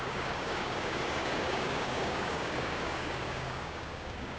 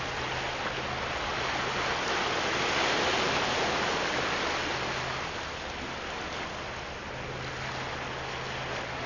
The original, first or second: second